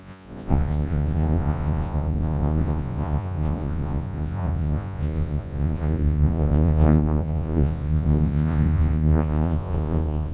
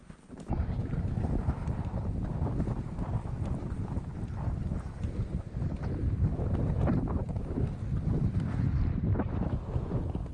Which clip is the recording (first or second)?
second